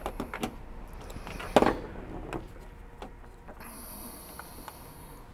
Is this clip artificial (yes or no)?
no